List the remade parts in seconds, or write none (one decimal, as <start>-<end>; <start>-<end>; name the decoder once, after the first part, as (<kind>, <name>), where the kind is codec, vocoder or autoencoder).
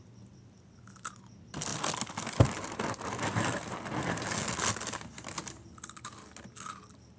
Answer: none